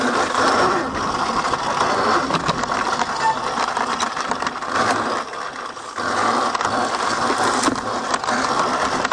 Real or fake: real